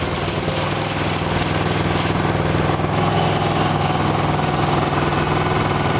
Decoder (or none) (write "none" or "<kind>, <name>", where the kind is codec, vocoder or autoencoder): none